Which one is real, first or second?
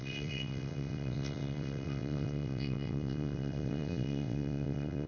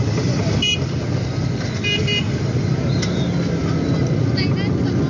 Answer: second